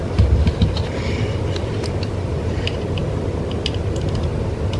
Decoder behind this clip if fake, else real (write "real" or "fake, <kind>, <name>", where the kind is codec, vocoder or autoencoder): real